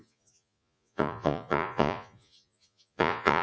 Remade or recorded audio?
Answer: remade